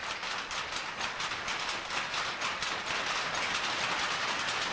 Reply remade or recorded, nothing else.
recorded